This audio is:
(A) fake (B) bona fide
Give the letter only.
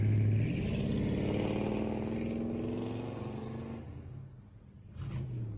B